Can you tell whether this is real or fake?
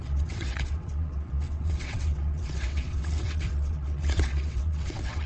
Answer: fake